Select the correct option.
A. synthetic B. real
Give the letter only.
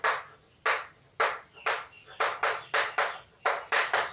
B